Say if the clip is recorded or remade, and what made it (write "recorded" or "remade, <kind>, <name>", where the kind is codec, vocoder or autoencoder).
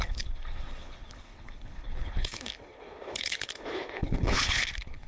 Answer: remade, codec, HILCodec